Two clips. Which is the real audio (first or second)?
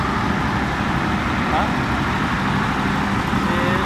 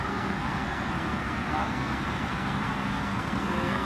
first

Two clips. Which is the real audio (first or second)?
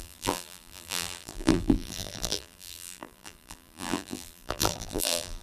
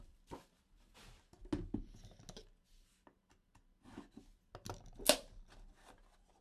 second